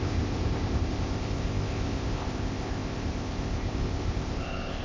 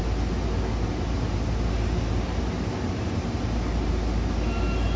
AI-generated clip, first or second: first